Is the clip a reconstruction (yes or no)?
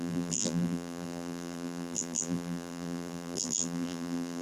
yes